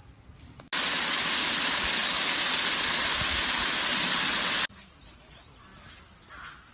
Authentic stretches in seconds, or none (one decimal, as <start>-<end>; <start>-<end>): 0.0-6.7